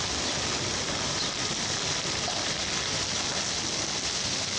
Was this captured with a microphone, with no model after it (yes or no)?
yes